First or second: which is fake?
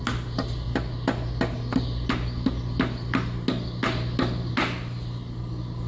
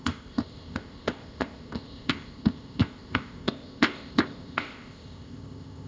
second